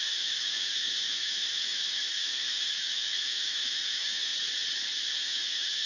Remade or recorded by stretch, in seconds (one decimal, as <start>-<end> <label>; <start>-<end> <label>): 0.0-4.3 remade; 4.3-5.1 recorded; 5.1-5.9 remade